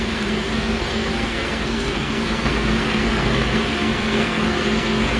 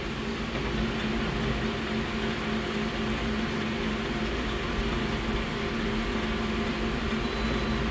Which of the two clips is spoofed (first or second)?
first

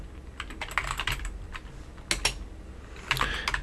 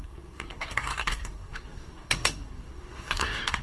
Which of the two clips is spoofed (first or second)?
second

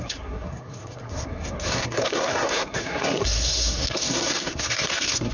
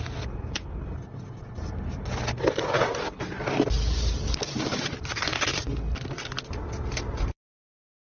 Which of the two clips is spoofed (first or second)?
first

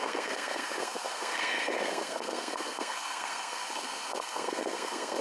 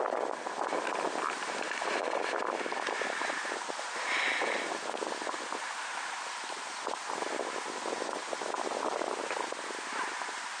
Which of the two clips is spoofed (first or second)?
first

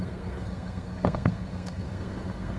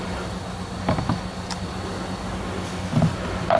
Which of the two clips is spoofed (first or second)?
first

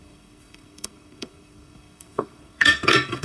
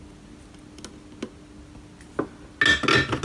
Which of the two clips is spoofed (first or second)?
first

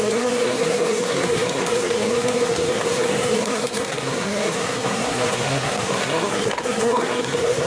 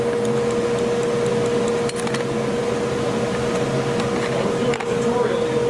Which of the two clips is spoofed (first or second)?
first